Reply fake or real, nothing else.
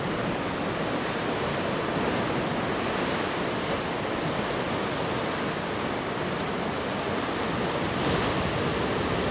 real